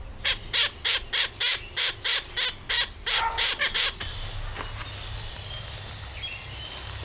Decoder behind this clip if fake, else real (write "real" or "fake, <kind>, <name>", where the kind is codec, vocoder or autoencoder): real